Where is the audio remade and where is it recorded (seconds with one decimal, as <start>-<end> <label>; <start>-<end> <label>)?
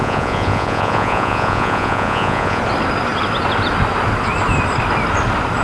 0.0-2.6 remade; 2.6-5.6 recorded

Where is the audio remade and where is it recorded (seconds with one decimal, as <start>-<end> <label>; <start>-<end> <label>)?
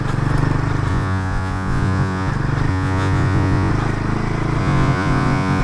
0.0-0.9 recorded; 0.9-2.3 remade; 2.3-2.7 recorded; 2.7-3.7 remade; 3.7-4.6 recorded; 4.6-5.6 remade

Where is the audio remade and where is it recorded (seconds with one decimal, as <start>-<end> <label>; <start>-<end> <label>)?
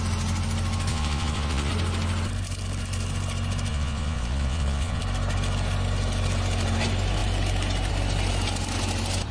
0.0-0.9 recorded; 0.9-1.7 remade; 1.7-3.7 recorded; 3.7-5.0 remade; 5.0-9.3 recorded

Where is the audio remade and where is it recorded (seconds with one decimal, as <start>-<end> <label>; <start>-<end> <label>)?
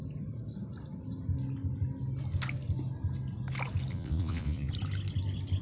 0.0-3.9 recorded; 3.9-4.7 remade; 4.7-5.6 recorded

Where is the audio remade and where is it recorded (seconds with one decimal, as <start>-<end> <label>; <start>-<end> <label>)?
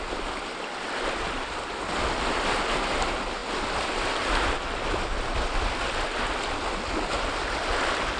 0.0-8.2 recorded